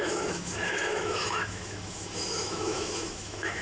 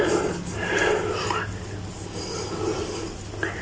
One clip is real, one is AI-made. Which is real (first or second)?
second